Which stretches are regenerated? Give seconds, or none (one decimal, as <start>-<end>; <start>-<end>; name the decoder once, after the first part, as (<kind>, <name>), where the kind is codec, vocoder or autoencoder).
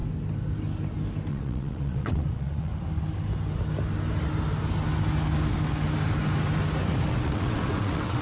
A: 1.3-2.7 (vocoder, WaveNeXt); 7.1-8.2